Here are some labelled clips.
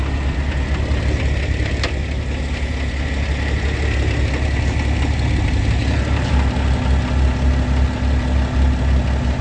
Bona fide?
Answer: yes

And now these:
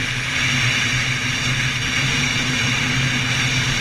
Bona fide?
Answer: yes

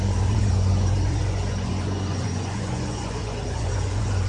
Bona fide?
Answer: no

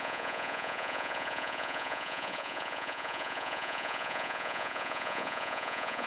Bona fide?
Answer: no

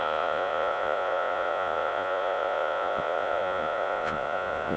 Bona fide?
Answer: no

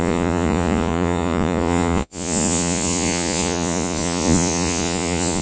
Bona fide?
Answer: no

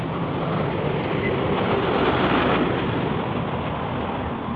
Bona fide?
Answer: yes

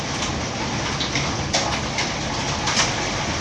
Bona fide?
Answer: yes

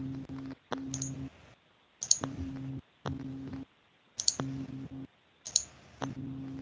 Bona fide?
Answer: yes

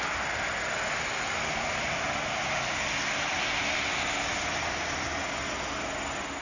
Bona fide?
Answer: yes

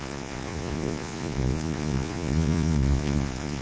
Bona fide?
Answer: no